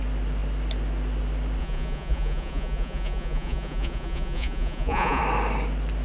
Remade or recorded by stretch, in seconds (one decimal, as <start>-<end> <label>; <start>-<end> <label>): 0.0-1.6 recorded; 1.6-5.2 remade; 5.2-6.0 recorded